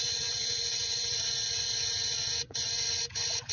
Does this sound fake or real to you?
fake